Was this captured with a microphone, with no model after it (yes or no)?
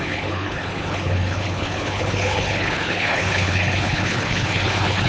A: no